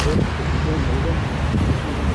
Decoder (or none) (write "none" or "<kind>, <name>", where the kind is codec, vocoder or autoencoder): none